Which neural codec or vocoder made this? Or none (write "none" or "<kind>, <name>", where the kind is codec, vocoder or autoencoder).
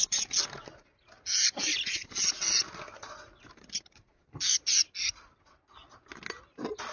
none